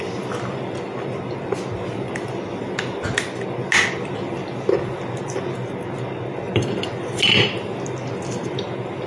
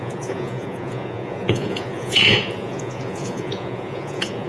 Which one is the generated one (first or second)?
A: second